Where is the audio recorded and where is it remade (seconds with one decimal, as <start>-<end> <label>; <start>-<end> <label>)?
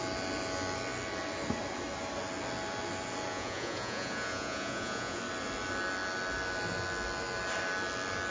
0.0-3.3 recorded; 3.3-5.2 remade; 5.2-8.3 recorded